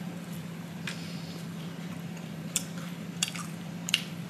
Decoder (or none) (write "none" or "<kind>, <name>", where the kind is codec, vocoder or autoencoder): vocoder, BigVGAN v2